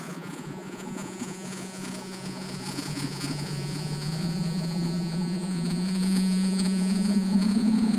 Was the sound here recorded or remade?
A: remade